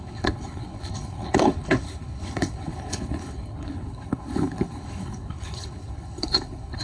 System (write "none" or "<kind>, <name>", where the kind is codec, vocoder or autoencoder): codec, HILCodec